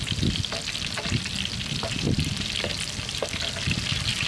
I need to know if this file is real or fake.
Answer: real